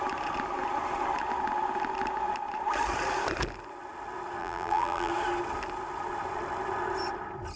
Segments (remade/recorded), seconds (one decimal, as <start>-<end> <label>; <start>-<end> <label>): 0.0-4.4 recorded; 4.4-5.1 remade; 5.1-7.6 recorded

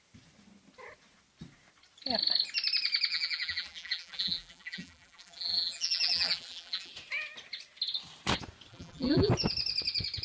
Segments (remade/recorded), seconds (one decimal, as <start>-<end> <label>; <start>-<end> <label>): 0.0-3.1 recorded; 3.1-6.9 remade; 6.9-8.7 recorded; 8.7-9.3 remade; 9.3-10.2 recorded

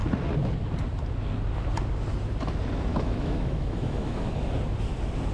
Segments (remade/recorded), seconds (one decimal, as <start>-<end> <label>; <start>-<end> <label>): 0.0-2.9 recorded; 2.9-4.5 remade; 4.5-5.3 recorded

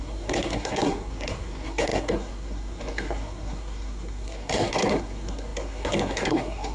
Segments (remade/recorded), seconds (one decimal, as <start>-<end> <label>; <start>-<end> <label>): 0.0-6.7 remade

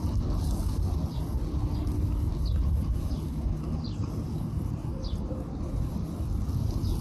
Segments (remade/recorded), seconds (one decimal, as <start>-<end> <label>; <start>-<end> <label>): 0.0-7.0 recorded

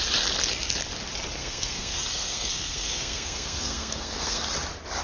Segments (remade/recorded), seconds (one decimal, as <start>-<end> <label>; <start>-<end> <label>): 0.0-1.4 recorded; 1.4-4.4 remade; 4.4-5.0 recorded

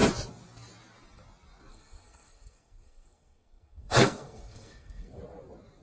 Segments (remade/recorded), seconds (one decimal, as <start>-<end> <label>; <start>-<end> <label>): 0.0-1.7 recorded; 1.7-5.2 remade; 5.2-5.8 recorded